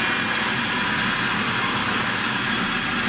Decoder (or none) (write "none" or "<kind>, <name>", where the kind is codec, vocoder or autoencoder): none